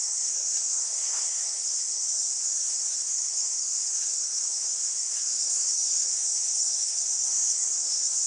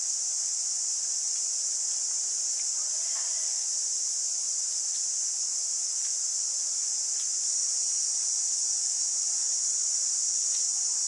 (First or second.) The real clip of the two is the second